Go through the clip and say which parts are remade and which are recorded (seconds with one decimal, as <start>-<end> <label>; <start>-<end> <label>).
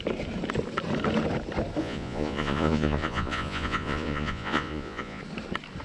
0.0-1.8 recorded; 1.8-5.2 remade; 5.2-5.8 recorded